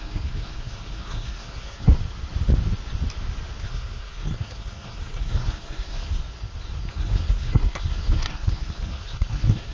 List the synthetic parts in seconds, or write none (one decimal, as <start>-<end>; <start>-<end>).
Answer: 0.0-2.0; 3.6-6.2; 6.9-9.7